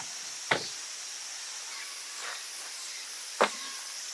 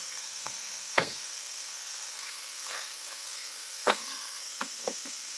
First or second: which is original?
first